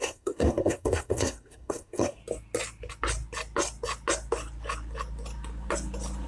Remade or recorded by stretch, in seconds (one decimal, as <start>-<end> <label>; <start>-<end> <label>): 0.0-2.2 remade; 2.2-6.3 recorded